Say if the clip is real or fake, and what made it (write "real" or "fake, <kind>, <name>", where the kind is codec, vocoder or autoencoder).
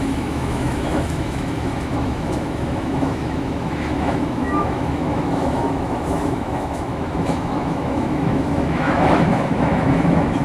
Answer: fake, autoencoder, DAC-VAE